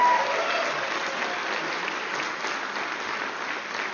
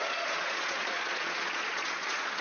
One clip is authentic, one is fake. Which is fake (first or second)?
second